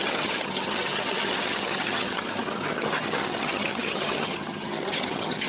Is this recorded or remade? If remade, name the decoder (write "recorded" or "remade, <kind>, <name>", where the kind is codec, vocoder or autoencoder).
remade, vocoder, HiFi-GAN